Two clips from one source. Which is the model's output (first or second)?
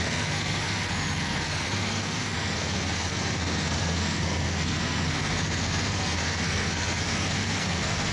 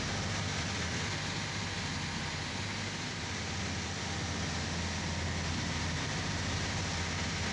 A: first